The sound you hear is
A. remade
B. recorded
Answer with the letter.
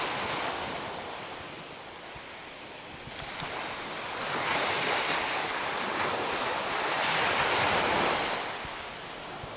B